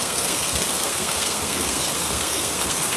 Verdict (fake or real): fake